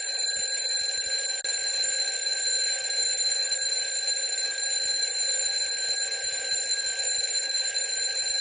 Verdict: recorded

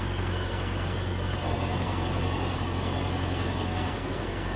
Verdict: remade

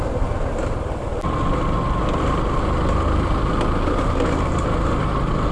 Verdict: recorded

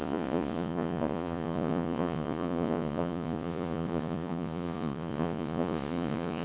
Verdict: remade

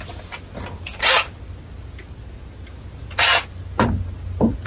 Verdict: recorded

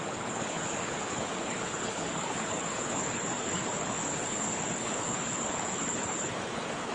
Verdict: remade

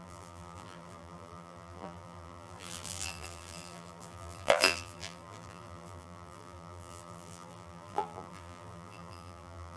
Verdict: remade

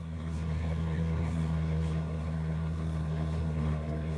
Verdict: remade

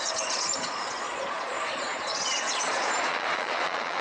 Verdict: remade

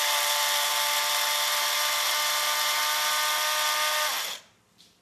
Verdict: recorded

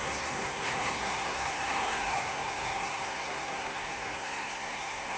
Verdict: remade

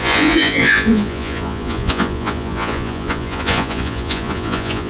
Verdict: remade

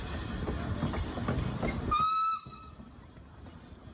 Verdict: recorded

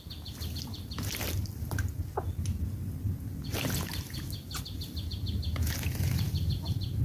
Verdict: recorded